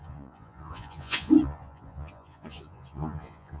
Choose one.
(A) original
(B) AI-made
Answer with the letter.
B